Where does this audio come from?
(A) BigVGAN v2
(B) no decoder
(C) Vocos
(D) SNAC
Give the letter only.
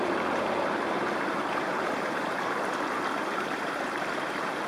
A